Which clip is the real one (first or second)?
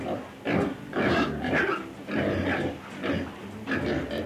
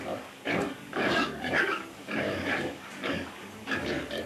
first